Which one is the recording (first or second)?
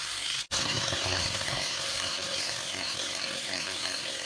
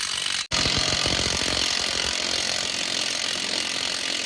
second